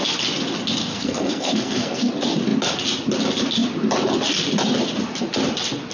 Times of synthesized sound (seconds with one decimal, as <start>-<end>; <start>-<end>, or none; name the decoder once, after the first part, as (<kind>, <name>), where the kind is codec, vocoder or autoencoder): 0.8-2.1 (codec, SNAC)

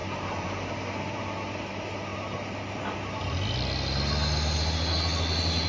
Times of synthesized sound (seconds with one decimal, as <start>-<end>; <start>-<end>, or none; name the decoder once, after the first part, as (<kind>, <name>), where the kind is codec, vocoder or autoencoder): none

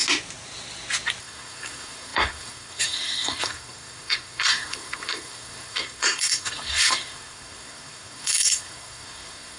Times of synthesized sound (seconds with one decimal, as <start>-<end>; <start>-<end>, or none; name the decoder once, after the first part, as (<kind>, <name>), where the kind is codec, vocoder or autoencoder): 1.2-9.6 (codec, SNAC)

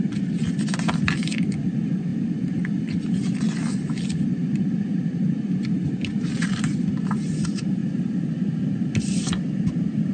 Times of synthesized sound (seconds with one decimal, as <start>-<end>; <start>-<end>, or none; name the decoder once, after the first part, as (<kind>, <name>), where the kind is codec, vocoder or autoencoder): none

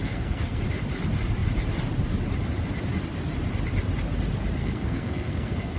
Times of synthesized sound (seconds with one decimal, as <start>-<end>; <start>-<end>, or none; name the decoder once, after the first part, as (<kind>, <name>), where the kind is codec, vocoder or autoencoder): 0.0-0.6 (codec, SNAC); 4.6-5.8

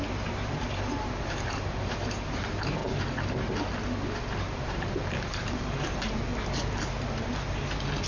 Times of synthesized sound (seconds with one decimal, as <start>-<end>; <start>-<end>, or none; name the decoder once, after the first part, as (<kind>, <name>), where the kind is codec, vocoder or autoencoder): 0.0-2.8 (vocoder, BigVGAN v2); 4.4-6.3